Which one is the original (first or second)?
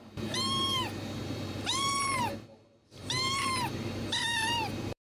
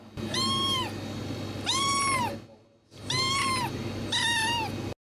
second